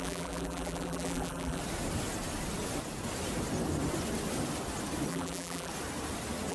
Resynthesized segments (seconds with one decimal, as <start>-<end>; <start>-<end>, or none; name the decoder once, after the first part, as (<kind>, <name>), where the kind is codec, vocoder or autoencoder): 0.0-1.6 (vocoder, BigVGAN v2); 5.1-5.7